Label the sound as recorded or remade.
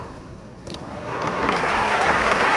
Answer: remade